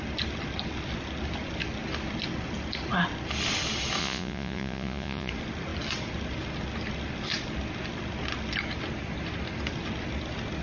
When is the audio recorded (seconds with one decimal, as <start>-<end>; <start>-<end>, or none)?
0.0-4.0; 5.3-10.6